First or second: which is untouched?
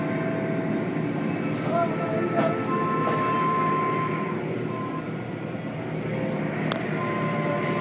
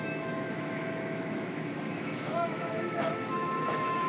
first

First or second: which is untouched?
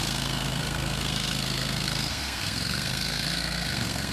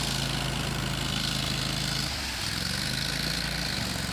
second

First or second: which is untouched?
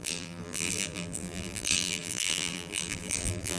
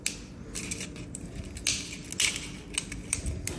second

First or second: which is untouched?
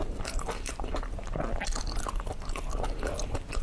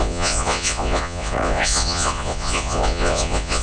first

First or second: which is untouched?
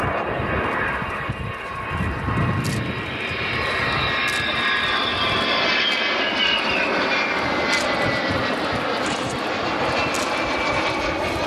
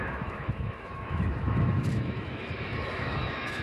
first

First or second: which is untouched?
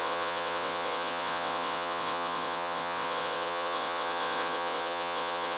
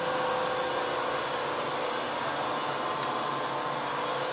second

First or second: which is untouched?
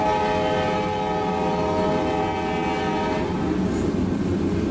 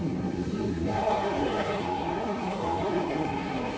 first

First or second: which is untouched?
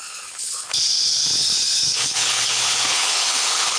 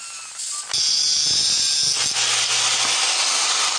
second